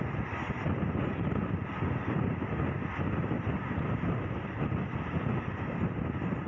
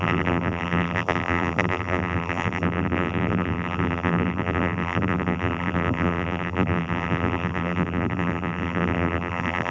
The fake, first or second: second